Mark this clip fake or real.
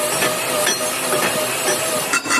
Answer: real